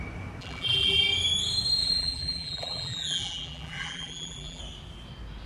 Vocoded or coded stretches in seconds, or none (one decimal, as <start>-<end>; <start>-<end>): 0.4-1.0; 1.8-4.6